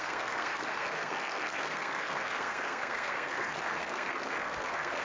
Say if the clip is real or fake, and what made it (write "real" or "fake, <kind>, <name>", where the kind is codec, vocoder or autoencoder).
fake, codec, SNAC